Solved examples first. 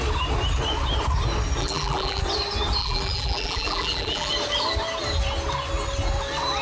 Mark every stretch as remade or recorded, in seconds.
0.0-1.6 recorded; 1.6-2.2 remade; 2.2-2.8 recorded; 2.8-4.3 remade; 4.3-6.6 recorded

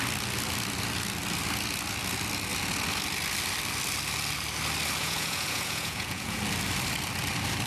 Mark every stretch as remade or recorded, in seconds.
0.0-5.0 recorded; 5.0-6.4 remade; 6.4-7.7 recorded

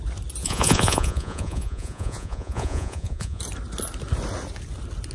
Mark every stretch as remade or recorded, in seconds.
0.0-0.4 recorded; 0.4-3.4 remade; 3.4-5.1 recorded